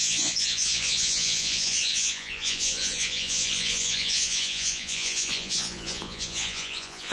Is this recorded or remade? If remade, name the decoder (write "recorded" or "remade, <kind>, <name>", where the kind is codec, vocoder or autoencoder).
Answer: remade, vocoder, Vocos